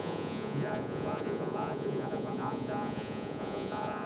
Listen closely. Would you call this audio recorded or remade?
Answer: remade